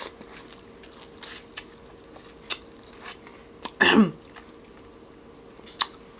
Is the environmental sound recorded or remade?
recorded